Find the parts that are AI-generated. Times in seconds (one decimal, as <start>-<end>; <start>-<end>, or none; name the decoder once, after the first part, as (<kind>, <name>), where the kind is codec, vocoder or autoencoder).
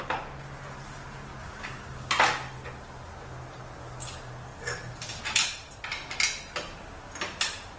1.4-2.1 (codec, DAC)